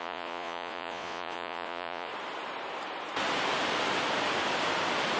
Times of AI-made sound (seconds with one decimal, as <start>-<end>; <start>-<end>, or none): 0.0-2.1